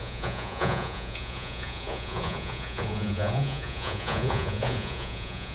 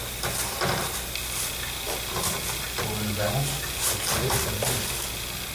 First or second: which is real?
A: second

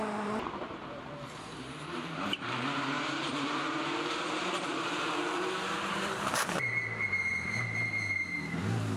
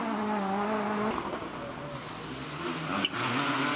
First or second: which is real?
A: second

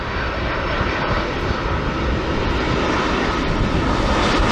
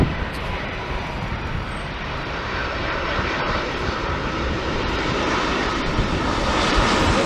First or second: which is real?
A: first